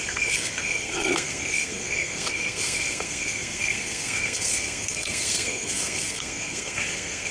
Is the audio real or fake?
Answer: fake